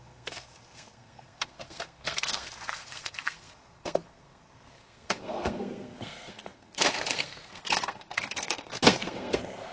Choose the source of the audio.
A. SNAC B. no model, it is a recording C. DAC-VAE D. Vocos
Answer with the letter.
A